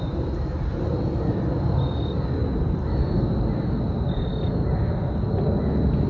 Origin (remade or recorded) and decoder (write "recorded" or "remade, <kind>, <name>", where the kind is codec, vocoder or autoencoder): recorded